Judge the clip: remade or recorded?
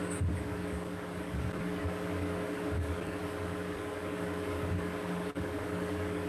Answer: remade